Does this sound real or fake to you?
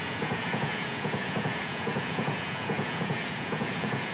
fake